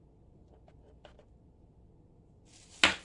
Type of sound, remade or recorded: recorded